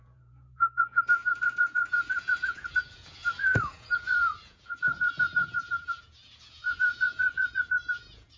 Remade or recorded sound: remade